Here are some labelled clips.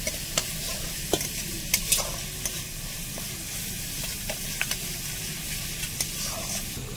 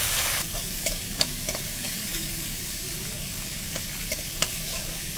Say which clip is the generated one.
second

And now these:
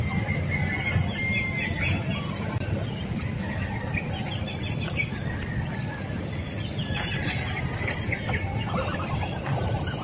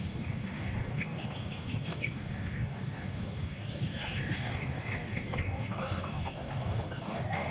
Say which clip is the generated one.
second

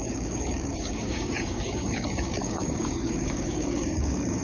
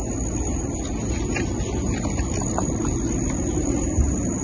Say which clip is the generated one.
first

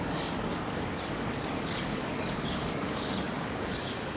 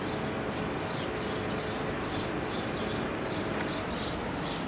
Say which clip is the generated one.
first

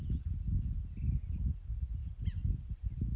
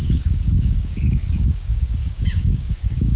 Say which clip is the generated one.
second